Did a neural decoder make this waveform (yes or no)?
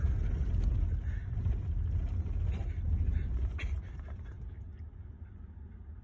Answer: no